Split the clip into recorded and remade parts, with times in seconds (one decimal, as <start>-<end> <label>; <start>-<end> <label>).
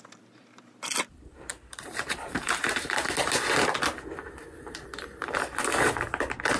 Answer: 0.0-1.5 recorded; 1.5-2.5 remade; 2.5-6.6 recorded